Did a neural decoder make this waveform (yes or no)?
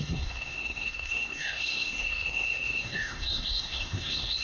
yes